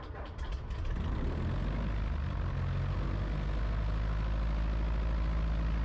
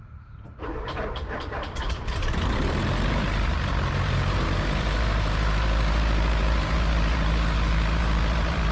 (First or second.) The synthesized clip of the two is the second